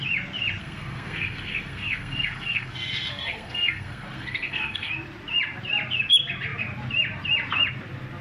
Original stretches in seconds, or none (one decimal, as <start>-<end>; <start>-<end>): 0.0-0.6; 4.9-8.2